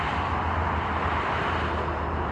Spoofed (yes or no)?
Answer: no